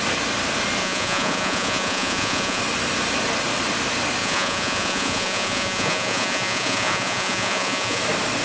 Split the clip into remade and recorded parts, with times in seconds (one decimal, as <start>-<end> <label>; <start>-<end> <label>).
0.0-0.8 recorded; 0.8-2.6 remade; 2.6-4.2 recorded; 4.2-8.0 remade; 8.0-8.4 recorded